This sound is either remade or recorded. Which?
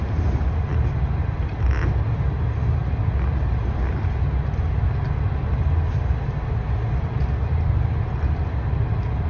recorded